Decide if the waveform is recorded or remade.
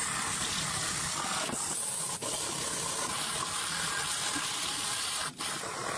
recorded